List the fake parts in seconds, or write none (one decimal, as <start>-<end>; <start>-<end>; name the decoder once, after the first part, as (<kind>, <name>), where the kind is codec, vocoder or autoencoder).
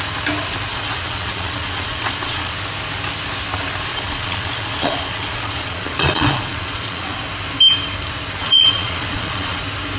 0.7-2.5 (vocoder, Vocos); 3.9-7.2; 8.4-9.6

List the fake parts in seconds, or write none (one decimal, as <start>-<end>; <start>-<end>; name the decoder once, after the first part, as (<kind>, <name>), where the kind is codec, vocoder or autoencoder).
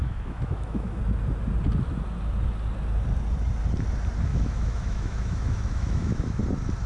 0.0-1.0 (autoencoder, DAC-VAE); 4.3-6.4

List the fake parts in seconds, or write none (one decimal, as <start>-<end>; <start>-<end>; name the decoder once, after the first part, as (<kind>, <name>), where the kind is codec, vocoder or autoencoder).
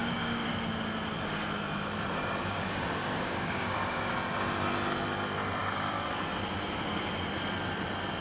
0.0-0.5 (codec, DAC); 2.4-4.1; 5.6-6.2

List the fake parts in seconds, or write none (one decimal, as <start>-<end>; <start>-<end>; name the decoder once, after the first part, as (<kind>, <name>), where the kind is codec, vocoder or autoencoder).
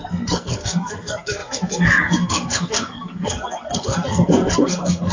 0.0-5.1 (codec, SNAC)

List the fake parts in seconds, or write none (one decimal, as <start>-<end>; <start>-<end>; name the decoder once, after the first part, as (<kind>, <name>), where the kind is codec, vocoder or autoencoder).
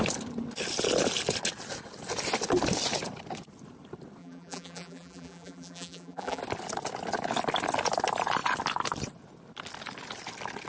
4.2-6.4 (vocoder, BigVGAN v2)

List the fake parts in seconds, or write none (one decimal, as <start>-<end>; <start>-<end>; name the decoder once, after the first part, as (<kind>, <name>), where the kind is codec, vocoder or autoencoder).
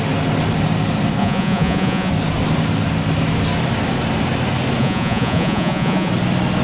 1.2-2.1 (vocoder, Vocos); 4.8-6.1